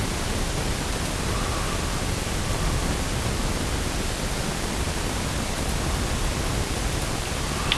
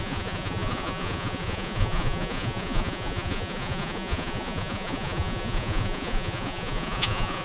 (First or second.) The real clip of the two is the first